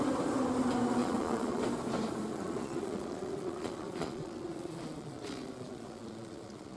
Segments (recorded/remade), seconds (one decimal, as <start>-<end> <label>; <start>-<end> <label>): 0.0-1.0 recorded; 1.0-1.6 remade; 1.6-2.3 recorded; 2.3-6.8 remade